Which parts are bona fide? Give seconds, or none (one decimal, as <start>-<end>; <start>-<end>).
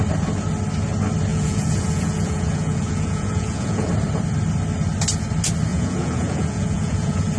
0.0-1.3; 3.9-5.7